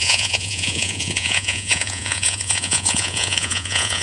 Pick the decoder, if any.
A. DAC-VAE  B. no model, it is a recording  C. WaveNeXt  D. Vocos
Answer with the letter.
D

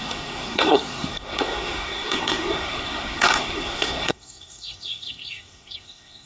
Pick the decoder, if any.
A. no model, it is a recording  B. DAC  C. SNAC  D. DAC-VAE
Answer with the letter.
C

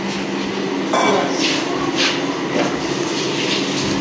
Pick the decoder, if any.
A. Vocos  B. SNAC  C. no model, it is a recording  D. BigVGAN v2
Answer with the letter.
C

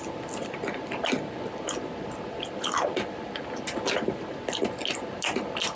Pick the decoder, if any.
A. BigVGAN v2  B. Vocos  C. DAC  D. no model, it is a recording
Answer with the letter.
D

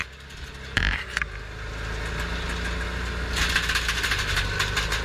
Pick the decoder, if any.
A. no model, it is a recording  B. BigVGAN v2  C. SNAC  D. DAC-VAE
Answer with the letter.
A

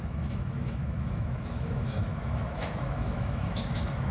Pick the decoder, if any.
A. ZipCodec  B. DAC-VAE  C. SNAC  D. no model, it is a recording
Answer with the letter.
B